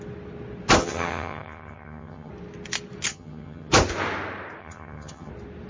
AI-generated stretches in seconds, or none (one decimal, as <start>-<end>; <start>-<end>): 0.8-2.3; 3.1-3.7; 4.6-5.3